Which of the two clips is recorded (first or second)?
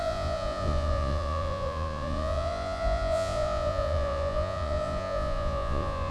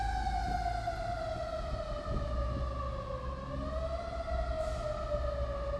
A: second